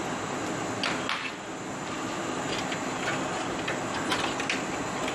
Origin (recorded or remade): recorded